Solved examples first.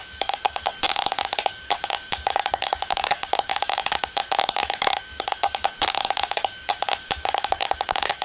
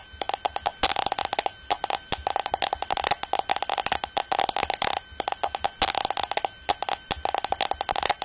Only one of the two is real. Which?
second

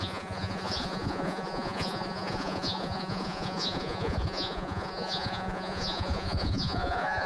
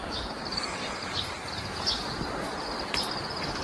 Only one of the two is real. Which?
second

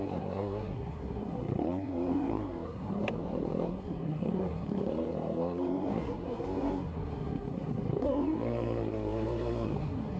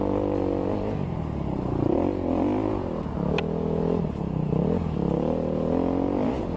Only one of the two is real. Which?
second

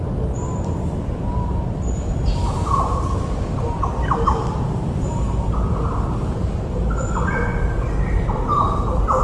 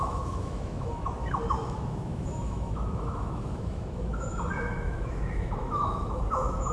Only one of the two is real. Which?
first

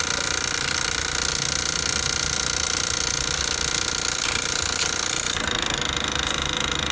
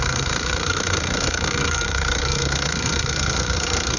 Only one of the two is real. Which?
first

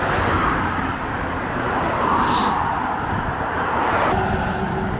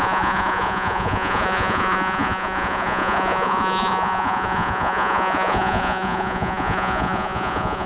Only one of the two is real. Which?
first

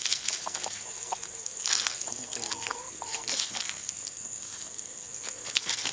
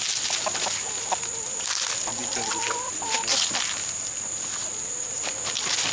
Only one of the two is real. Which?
second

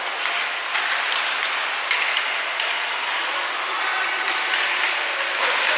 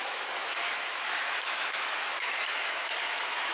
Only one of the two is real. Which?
first